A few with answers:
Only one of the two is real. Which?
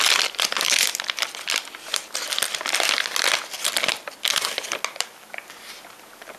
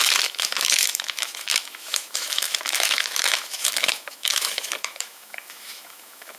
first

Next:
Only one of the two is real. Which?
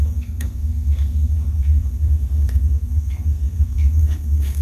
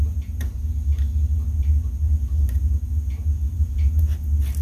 second